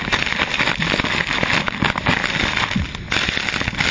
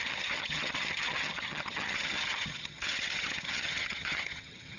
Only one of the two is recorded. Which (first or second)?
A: first